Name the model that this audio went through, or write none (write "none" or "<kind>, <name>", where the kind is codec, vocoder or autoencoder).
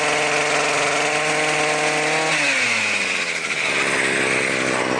none